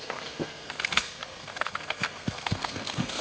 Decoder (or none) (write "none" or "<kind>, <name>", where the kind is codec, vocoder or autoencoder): codec, SNAC